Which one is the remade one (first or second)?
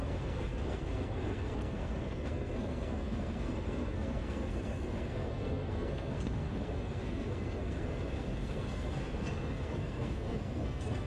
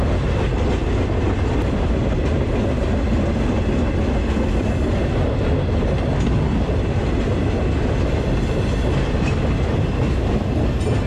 first